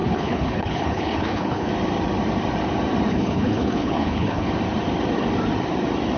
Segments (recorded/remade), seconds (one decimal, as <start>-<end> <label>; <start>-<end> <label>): 0.0-1.7 remade; 1.7-3.1 recorded; 3.1-4.5 remade; 4.5-6.2 recorded